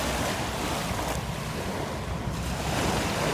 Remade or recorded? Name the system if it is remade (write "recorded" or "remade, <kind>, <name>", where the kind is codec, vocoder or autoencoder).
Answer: recorded